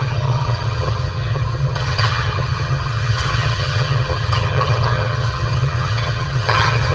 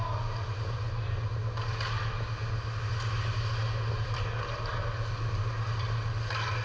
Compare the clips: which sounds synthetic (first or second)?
first